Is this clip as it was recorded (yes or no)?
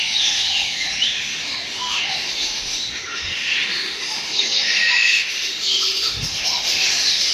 no